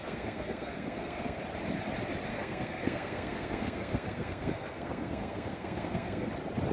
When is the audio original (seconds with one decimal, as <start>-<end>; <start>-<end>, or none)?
1.4-2.3; 6.3-6.7